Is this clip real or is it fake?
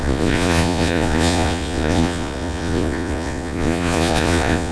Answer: fake